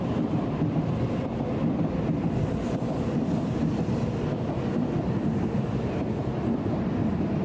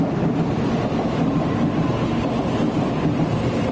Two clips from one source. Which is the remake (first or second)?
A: first